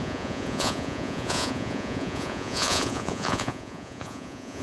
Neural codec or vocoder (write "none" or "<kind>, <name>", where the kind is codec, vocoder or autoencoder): vocoder, Vocos